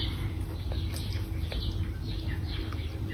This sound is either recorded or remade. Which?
recorded